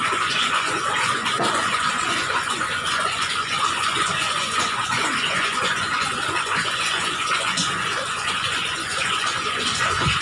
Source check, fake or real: fake